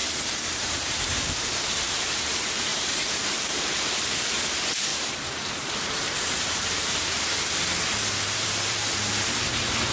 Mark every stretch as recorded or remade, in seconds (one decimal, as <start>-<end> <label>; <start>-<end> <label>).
0.0-0.6 recorded; 0.6-4.9 remade; 4.9-5.5 recorded; 5.5-7.3 remade; 7.3-7.8 recorded; 7.8-9.9 remade